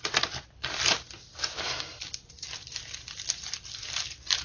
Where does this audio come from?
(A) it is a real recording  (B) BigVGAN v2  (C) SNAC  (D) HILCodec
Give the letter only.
B